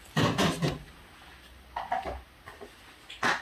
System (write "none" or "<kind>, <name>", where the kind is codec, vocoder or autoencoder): none